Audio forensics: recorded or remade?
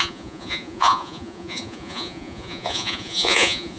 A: remade